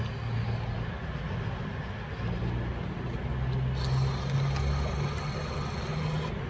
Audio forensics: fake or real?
real